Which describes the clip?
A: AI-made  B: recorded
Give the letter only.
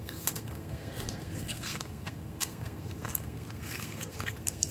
A